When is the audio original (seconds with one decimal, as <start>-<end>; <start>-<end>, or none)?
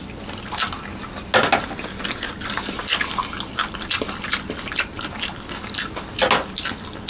0.0-7.1